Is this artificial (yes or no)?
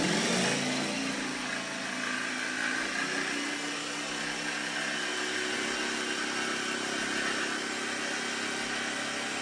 no